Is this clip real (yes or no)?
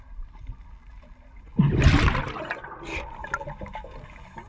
yes